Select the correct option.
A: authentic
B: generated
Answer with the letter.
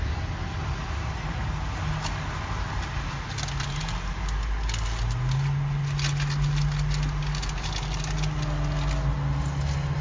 A